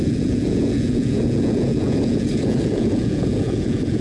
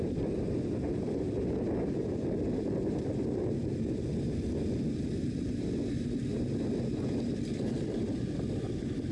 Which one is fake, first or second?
first